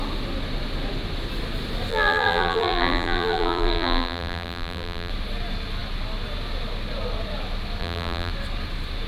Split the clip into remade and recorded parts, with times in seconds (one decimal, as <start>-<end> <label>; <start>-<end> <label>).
0.0-1.9 recorded; 1.9-5.1 remade; 5.1-7.8 recorded; 7.8-8.3 remade; 8.3-9.1 recorded